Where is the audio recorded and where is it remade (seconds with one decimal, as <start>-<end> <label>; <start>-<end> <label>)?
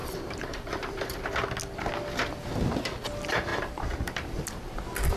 0.0-1.4 remade; 1.4-3.5 recorded; 3.5-4.4 remade; 4.4-5.2 recorded